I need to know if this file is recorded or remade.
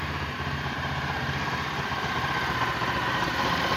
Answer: remade